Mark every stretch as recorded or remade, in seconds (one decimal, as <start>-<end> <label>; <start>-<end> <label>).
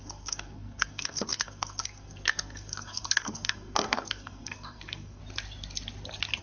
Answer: 0.0-5.2 remade; 5.2-6.4 recorded